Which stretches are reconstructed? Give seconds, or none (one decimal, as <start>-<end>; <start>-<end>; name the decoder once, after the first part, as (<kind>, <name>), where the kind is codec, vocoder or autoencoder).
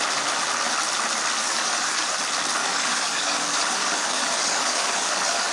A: 1.4-2.2 (codec, DAC); 2.6-5.5